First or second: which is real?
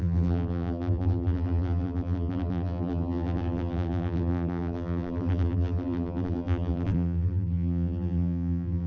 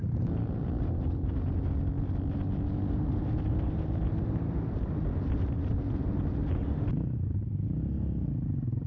second